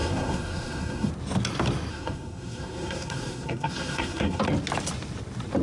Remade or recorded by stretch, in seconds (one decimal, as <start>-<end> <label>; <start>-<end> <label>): 0.0-1.1 remade; 1.1-1.9 recorded; 1.9-4.4 remade; 4.4-5.6 recorded